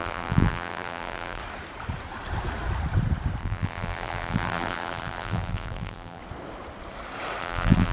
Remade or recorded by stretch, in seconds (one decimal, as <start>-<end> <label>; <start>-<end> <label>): 0.0-1.4 remade; 1.4-3.4 recorded; 3.4-6.2 remade; 6.2-7.4 recorded; 7.4-7.9 remade